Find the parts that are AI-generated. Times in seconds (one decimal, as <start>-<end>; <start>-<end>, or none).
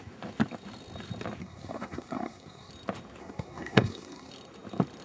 1.4-2.7; 3.2-4.3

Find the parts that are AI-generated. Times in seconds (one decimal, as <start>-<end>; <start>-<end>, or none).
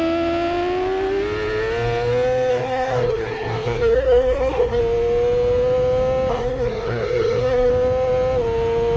2.5-4.8; 6.3-7.7